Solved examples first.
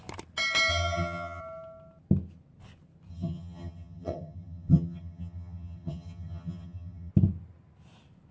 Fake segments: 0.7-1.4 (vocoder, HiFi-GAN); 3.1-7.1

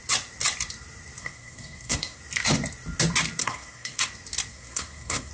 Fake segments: 1.2-2.2 (codec, SNAC); 3.4-4.0; 4.5-5.3

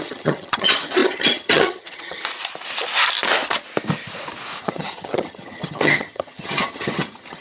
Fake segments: 0.0-2.2 (vocoder, HiFi-GAN); 4.6-7.4